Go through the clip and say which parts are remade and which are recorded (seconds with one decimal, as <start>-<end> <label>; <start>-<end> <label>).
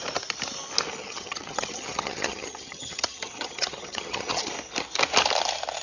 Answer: 0.0-1.0 recorded; 1.0-4.5 remade; 4.5-5.8 recorded